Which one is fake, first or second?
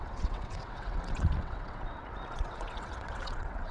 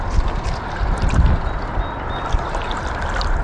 first